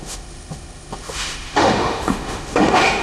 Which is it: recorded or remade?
remade